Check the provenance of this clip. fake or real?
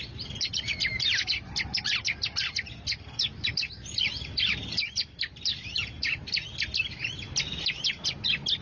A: fake